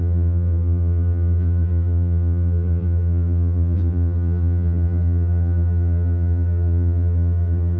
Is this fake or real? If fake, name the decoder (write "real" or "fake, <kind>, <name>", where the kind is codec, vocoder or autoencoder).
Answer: fake, vocoder, BigVGAN v2